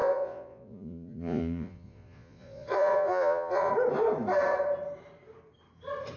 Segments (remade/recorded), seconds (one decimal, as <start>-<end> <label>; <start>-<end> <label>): 0.0-3.7 remade; 3.7-6.2 recorded

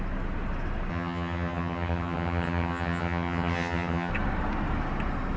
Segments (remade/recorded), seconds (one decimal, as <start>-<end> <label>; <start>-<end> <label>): 0.0-0.9 recorded; 0.9-4.1 remade; 4.1-5.4 recorded

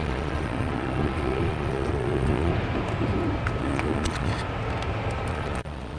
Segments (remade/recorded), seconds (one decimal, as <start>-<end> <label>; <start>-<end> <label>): 0.0-2.5 remade; 2.5-3.6 recorded; 3.6-4.3 remade; 4.3-5.3 recorded; 5.3-6.0 remade

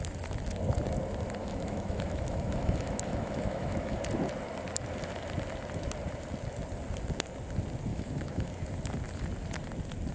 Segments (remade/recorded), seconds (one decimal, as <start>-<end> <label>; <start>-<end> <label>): 0.0-1.4 recorded; 1.4-4.0 remade; 4.0-7.9 recorded; 7.9-8.5 remade; 8.5-10.1 recorded